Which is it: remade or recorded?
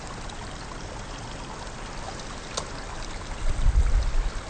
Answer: recorded